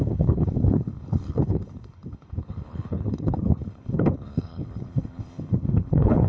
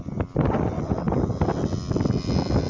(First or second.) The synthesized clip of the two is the first